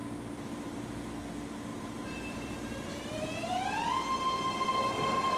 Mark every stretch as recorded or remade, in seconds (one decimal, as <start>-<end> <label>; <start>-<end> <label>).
0.0-0.8 remade; 0.8-1.7 recorded; 1.7-3.6 remade; 3.6-5.4 recorded